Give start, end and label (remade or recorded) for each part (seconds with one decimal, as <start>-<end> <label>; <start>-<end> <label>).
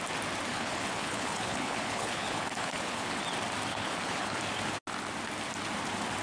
0.0-0.5 recorded; 0.5-3.2 remade; 3.2-3.7 recorded; 3.7-4.4 remade; 4.4-6.2 recorded